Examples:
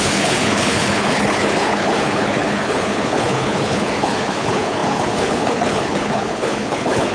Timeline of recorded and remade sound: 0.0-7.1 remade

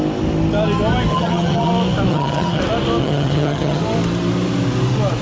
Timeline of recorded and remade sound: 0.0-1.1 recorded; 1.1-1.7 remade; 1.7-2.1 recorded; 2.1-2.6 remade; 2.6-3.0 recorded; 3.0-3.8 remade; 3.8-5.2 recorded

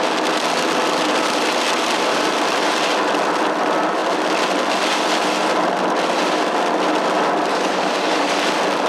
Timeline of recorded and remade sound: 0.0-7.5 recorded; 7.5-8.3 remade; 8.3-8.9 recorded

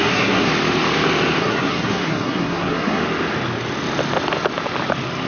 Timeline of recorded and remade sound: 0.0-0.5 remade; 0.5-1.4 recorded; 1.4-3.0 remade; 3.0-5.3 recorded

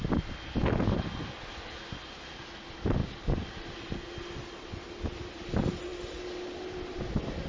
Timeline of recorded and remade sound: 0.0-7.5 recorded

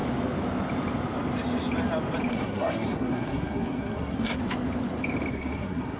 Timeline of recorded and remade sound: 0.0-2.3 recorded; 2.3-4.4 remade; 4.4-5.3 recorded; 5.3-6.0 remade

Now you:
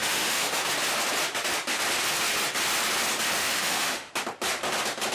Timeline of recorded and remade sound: 0.0-0.6 remade; 0.6-3.4 recorded; 3.4-4.1 remade; 4.1-5.1 recorded

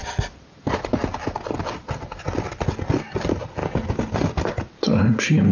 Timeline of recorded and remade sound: 0.0-5.5 recorded